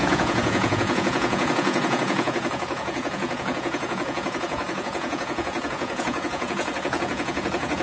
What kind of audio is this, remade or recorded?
remade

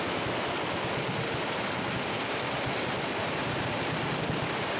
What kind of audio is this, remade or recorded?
recorded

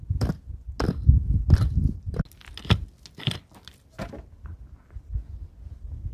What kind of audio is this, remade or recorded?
recorded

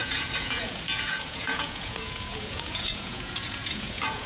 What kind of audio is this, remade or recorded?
remade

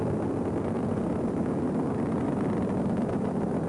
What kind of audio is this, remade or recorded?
recorded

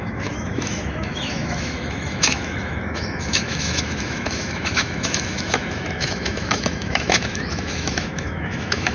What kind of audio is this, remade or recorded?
remade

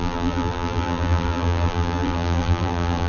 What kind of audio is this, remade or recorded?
remade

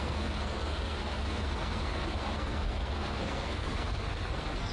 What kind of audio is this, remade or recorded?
remade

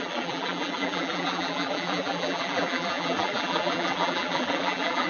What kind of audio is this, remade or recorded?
remade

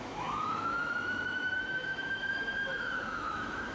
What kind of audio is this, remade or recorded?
remade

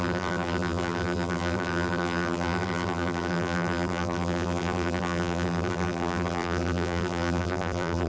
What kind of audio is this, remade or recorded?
remade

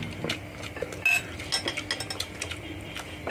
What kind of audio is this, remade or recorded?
recorded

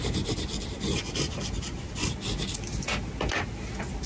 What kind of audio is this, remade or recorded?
recorded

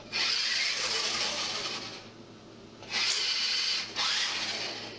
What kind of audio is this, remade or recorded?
recorded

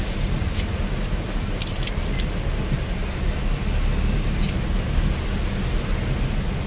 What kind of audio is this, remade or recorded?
recorded